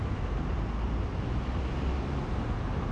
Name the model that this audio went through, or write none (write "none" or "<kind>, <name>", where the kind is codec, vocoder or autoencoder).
none